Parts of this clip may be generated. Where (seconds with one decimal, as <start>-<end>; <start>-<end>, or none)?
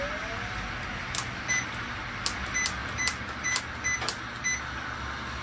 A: 2.8-3.6